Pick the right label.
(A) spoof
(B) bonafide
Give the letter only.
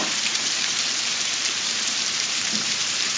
A